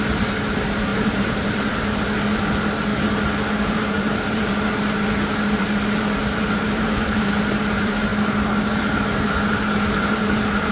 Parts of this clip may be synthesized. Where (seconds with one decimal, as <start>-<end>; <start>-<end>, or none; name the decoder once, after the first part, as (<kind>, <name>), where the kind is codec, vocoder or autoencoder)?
0.0-2.9 (vocoder, BigVGAN v2); 3.5-8.1; 8.7-10.7